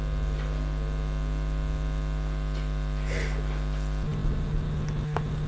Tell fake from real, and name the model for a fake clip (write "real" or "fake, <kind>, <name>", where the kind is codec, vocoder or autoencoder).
real